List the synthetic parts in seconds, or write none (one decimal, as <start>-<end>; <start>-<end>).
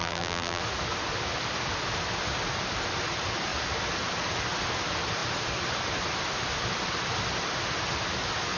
0.0-0.6